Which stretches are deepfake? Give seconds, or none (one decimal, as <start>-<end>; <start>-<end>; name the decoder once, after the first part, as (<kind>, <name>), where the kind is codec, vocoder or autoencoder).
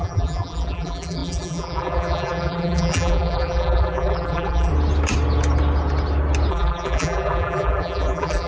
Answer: 0.0-4.7 (vocoder, BigVGAN v2); 6.5-8.5